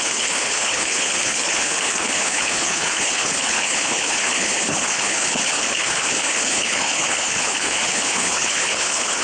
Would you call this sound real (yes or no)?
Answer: no